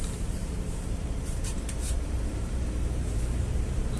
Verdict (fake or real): fake